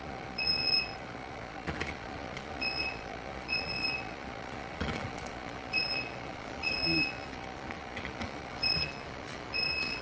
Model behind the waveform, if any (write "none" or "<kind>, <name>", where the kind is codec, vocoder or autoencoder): vocoder, Vocos